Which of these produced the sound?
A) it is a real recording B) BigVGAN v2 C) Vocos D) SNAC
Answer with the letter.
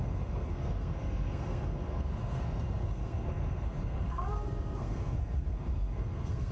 D